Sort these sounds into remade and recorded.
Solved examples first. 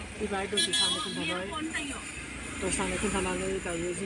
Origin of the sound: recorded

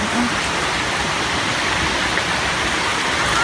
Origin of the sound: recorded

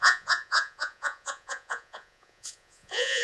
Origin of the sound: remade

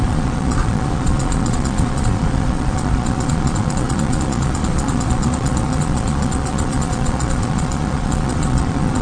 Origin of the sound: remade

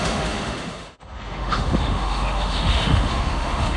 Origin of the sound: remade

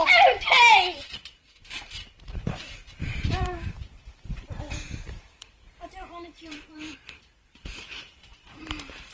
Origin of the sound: remade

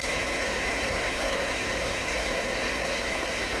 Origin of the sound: remade